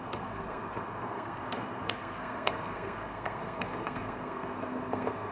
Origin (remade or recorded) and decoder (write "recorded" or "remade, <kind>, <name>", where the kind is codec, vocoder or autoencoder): remade, codec, SNAC